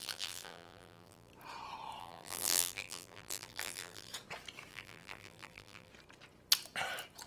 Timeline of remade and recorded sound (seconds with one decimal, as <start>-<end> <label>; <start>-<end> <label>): 0.0-1.3 remade; 1.3-2.0 recorded; 2.0-4.1 remade; 4.1-4.7 recorded; 4.7-5.9 remade; 5.9-7.3 recorded